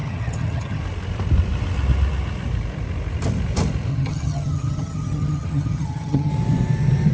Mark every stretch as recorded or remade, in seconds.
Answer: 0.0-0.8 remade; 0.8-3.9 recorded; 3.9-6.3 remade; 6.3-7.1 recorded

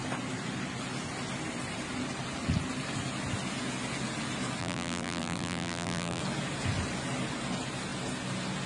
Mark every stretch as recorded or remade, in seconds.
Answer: 0.0-4.6 recorded; 4.6-6.2 remade; 6.2-8.7 recorded

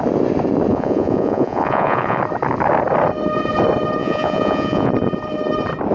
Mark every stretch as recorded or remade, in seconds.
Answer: 0.0-0.7 recorded; 0.7-2.2 remade; 2.2-4.0 recorded; 4.0-4.9 remade; 4.9-5.9 recorded

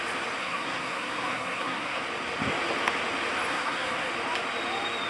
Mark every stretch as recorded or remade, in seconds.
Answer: 0.0-0.4 recorded; 0.4-2.0 remade; 2.0-3.5 recorded; 3.5-4.1 remade; 4.1-5.1 recorded

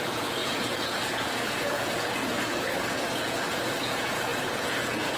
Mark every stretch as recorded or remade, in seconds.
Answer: 0.0-5.2 remade

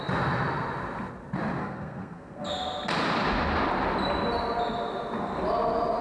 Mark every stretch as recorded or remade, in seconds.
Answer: 0.0-1.6 recorded; 1.6-2.4 remade; 2.4-6.0 recorded

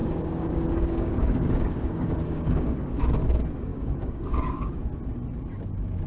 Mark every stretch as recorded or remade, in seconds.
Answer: 0.0-3.0 remade; 3.0-3.7 recorded; 3.7-4.7 remade; 4.7-6.1 recorded